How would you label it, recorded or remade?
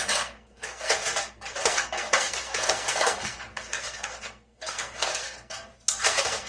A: remade